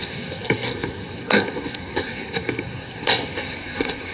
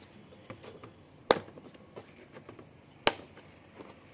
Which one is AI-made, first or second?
first